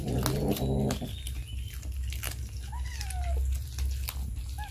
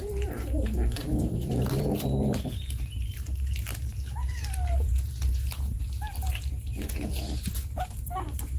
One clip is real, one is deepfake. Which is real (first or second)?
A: first